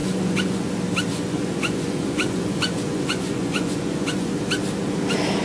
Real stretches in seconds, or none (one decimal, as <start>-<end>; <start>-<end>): 0.7-1.1; 4.3-5.4